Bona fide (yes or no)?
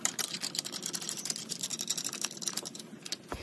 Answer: no